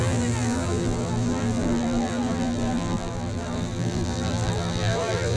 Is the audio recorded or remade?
remade